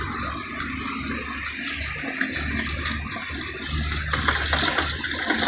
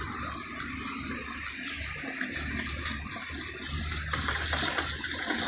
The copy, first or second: second